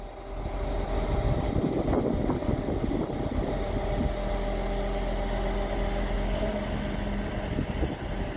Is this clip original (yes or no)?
yes